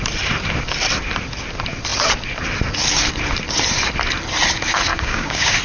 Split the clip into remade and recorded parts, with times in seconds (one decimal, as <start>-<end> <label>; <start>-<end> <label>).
0.0-4.9 recorded; 4.9-5.6 remade